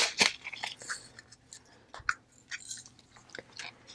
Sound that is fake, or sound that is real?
real